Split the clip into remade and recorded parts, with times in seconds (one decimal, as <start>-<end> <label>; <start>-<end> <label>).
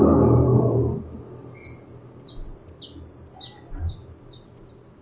0.0-5.0 recorded